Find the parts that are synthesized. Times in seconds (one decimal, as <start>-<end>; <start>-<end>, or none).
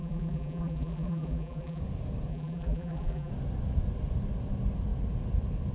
0.0-1.8; 2.3-3.3